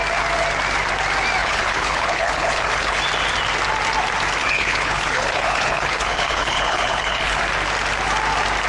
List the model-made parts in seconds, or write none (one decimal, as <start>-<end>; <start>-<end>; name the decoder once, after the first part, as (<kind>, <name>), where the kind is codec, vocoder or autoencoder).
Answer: 1.4-3.0 (codec, HILCodec); 4.4-7.4